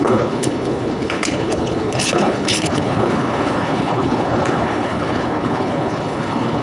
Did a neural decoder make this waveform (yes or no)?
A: yes